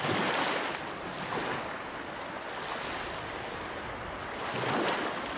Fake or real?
real